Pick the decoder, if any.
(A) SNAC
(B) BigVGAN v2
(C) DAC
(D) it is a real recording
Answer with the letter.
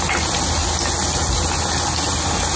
D